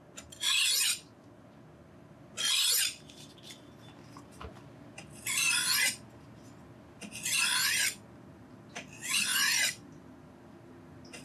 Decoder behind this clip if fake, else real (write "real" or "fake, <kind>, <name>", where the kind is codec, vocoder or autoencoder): real